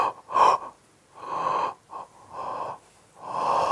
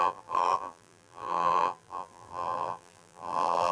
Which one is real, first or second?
first